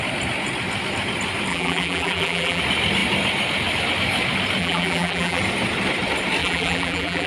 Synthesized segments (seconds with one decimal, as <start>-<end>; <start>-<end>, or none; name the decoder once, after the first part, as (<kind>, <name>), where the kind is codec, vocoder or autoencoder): 1.5-2.6 (vocoder, BigVGAN v2); 4.6-5.4; 6.4-7.3